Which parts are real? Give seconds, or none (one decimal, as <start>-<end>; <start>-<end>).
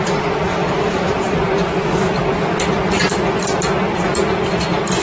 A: 0.0-0.5; 1.1-5.0